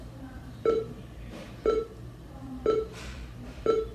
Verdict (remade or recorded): remade